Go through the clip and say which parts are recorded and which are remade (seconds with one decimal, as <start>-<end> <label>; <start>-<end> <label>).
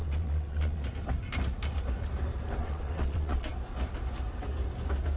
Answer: 0.0-0.8 remade; 0.8-2.6 recorded; 2.6-3.5 remade; 3.5-5.2 recorded